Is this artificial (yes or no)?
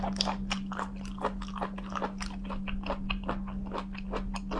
no